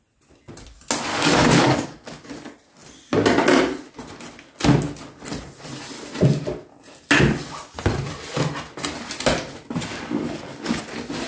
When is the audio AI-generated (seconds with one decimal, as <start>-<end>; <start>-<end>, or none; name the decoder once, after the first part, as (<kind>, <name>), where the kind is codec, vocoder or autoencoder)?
1.1-2.3 (codec, DAC); 9.9-10.8